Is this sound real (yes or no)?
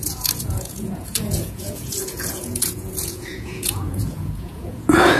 no